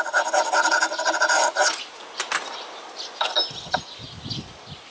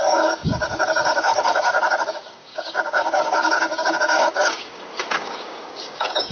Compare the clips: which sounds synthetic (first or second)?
second